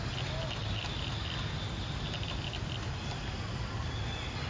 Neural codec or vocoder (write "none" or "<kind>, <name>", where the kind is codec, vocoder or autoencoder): none